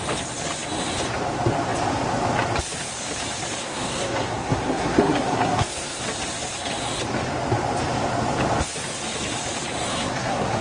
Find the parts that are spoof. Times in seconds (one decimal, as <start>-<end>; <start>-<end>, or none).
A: 3.6-6.0; 9.9-10.6